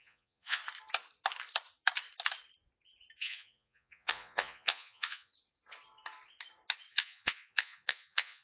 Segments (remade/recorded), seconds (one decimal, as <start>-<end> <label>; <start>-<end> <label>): 0.0-0.6 remade; 0.6-3.2 recorded; 3.2-5.3 remade; 5.3-6.9 recorded; 6.9-8.4 remade